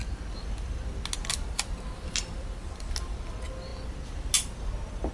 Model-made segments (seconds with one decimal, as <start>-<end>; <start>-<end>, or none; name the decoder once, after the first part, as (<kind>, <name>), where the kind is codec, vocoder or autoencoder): none